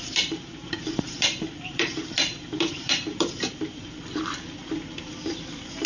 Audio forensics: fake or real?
fake